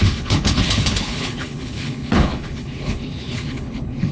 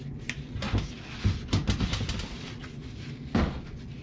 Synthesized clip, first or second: first